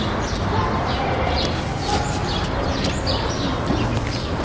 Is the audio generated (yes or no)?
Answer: no